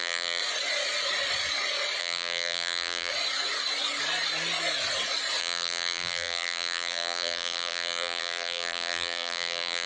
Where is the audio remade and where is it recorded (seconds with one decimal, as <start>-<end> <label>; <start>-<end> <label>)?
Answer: 0.0-0.4 remade; 0.4-2.0 recorded; 2.0-3.1 remade; 3.1-5.4 recorded; 5.4-9.9 remade